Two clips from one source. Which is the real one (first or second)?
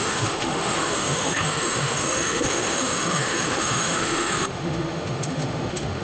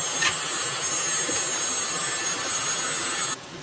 second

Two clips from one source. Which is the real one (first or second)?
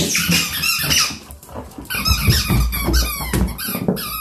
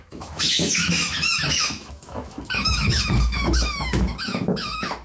first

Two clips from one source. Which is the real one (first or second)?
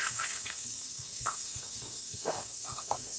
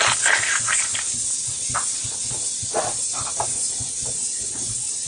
second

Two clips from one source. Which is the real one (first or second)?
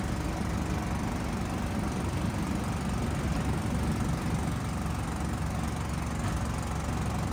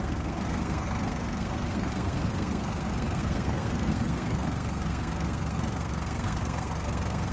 first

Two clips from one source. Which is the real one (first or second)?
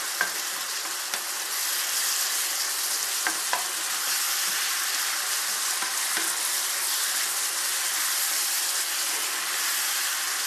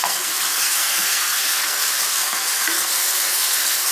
first